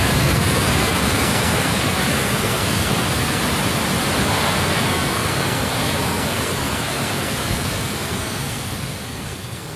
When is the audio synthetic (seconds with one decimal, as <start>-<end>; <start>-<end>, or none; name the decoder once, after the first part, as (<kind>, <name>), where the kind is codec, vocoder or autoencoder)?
0.0-3.4 (codec, SNAC); 4.2-9.8